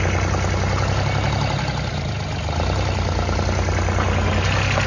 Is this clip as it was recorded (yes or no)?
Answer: yes